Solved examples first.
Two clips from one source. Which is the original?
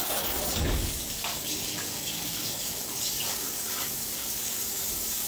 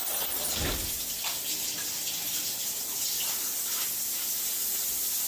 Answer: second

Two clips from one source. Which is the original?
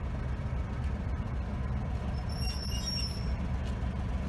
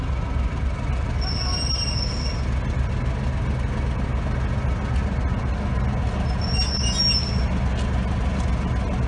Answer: second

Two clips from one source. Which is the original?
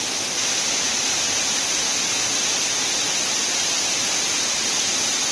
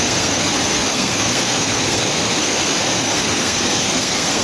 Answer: first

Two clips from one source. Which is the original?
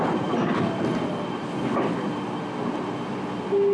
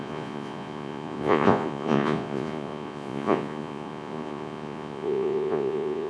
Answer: first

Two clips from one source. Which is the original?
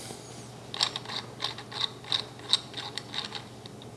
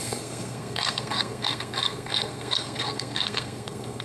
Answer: first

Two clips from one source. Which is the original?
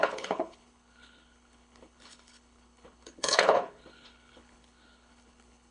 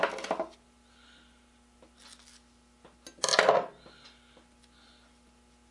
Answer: second